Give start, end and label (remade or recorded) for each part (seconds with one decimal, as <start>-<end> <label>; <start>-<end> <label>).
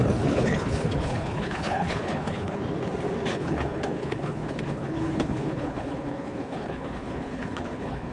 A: 0.0-2.6 remade; 2.6-3.3 recorded; 3.3-8.1 remade